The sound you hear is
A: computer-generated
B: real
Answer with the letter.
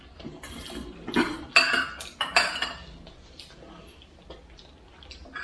B